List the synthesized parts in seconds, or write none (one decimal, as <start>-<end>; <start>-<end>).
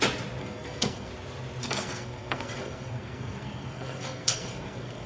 0.4-1.1; 1.6-5.1